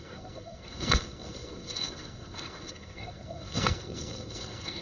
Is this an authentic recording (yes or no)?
no